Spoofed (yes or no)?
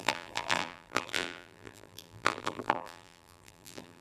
yes